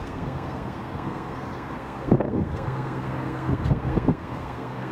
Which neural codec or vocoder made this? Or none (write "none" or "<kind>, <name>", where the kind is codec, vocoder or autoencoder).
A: codec, SNAC